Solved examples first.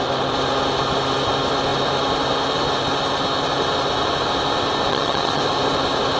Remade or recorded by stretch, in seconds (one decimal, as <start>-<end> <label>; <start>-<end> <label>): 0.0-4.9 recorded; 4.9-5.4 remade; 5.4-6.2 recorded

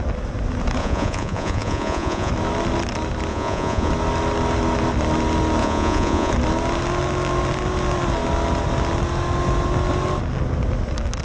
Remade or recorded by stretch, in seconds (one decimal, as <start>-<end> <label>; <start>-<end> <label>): 0.0-0.8 recorded; 0.8-2.3 remade; 2.3-3.3 recorded; 3.3-3.9 remade; 3.9-5.6 recorded; 5.6-6.3 remade; 6.3-11.2 recorded

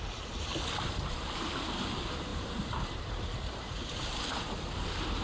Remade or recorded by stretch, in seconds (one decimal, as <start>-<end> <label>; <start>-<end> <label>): 0.0-0.5 remade; 0.5-1.1 recorded; 1.1-5.2 remade

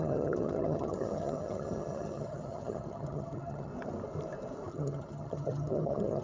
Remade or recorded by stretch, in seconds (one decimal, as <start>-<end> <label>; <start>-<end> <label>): 0.0-3.7 remade; 3.7-4.7 recorded; 4.7-6.2 remade

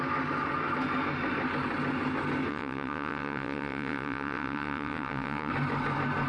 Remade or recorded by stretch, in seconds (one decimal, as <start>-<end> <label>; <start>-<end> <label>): 0.0-2.5 recorded; 2.5-5.5 remade; 5.5-6.3 recorded

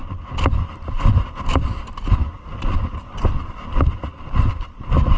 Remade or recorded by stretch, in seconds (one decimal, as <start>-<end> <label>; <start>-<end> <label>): 0.0-5.2 recorded

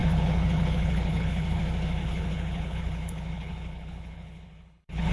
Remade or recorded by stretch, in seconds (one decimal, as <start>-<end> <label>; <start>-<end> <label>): 0.0-1.6 remade; 1.6-2.0 recorded; 2.0-5.1 remade